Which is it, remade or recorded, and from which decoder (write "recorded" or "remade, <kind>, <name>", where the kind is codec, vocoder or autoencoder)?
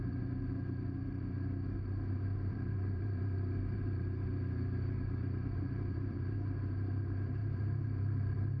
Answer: remade, vocoder, BigVGAN v2